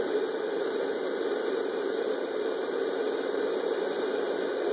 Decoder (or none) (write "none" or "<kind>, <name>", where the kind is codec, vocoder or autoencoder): none